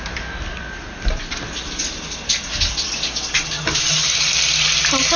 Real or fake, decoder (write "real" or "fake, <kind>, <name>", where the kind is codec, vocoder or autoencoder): real